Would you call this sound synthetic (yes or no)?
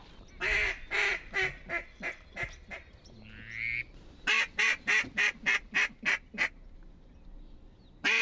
no